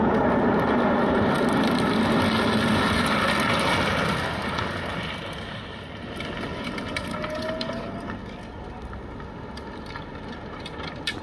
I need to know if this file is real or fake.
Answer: real